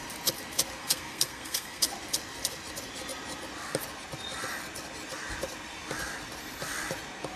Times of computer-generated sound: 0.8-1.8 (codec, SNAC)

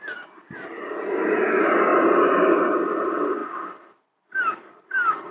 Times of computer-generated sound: none

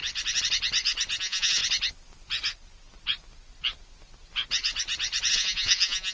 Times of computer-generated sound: 1.2-1.6 (vocoder, Vocos); 5.3-6.1

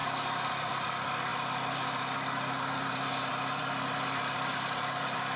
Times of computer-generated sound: 0.5-5.4 (vocoder, BigVGAN v2)

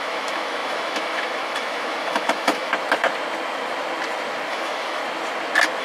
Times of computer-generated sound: 0.0-2.7 (autoencoder, DAC-VAE); 4.5-5.0

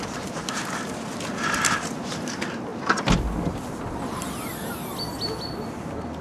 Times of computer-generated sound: none